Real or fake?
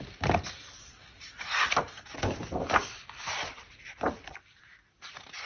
real